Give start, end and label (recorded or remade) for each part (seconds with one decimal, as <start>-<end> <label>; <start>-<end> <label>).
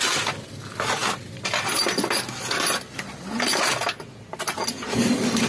0.0-5.5 recorded